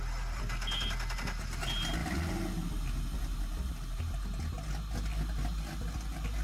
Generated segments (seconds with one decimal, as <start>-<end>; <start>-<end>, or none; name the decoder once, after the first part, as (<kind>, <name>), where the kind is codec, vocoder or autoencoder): none